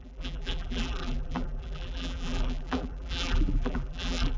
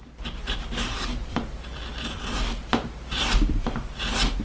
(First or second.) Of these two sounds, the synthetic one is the first